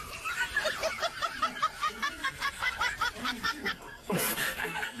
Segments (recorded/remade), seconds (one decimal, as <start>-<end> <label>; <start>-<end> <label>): 0.0-1.8 recorded; 1.8-2.8 remade; 2.8-3.2 recorded; 3.2-5.0 remade